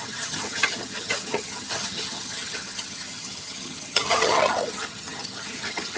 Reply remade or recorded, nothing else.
remade